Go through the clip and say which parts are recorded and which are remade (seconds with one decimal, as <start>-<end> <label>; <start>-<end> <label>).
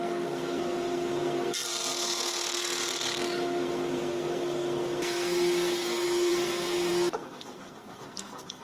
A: 0.0-8.6 remade